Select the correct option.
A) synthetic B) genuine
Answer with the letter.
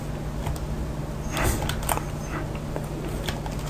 B